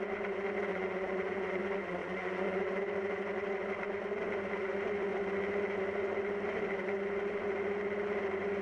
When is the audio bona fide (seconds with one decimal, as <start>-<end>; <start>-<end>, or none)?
0.0-0.7; 1.6-2.0; 2.8-8.6